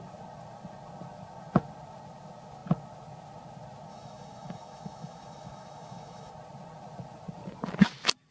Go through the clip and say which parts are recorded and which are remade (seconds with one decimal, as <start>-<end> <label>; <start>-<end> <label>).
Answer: 0.0-3.9 recorded; 3.9-6.3 remade; 6.3-8.3 recorded

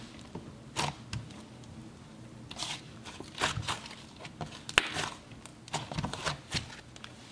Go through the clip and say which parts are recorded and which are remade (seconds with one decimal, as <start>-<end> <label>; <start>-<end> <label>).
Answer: 0.0-7.3 recorded

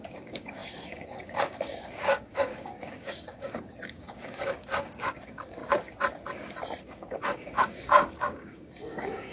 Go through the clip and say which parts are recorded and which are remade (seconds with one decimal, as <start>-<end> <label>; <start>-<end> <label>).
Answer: 0.0-5.6 remade; 5.6-6.8 recorded; 6.8-9.3 remade

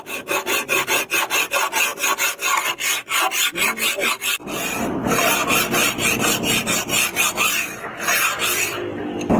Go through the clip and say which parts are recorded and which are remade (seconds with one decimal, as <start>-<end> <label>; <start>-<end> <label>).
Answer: 0.0-9.4 recorded

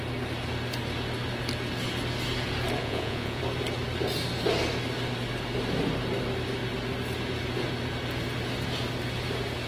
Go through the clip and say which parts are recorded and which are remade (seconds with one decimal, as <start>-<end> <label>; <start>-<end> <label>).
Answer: 0.0-2.8 recorded; 2.8-3.4 remade; 3.4-9.7 recorded

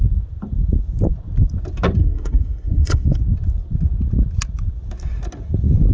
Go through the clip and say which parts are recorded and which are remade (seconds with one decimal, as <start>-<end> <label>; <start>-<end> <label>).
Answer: 0.0-2.0 recorded; 2.0-3.2 remade; 3.2-5.9 recorded

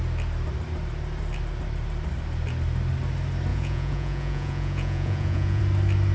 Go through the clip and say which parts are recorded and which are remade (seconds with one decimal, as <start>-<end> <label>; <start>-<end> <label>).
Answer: 0.0-3.5 recorded; 3.5-5.6 remade; 5.6-6.1 recorded